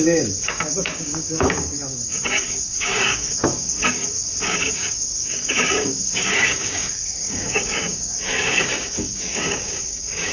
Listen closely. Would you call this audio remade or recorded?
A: remade